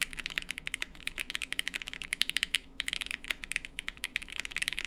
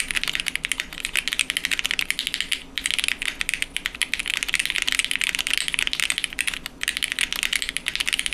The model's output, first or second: first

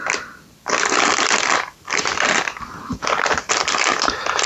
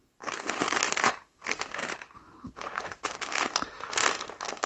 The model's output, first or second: second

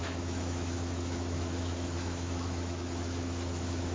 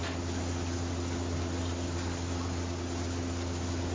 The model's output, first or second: first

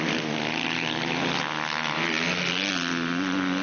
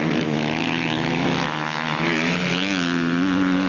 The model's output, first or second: second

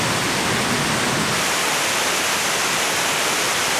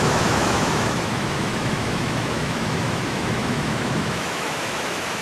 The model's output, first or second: second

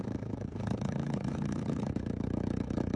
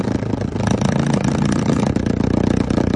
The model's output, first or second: first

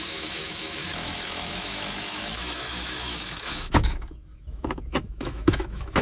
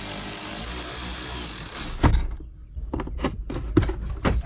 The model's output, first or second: first